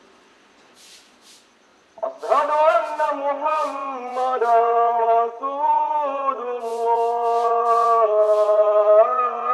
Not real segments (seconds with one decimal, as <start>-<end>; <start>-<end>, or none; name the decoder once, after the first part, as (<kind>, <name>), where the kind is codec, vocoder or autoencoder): 0.0-1.7 (vocoder, Vocos); 2.7-9.5